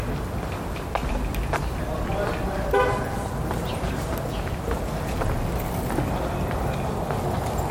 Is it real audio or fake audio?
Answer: real